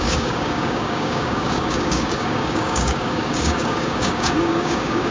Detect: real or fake fake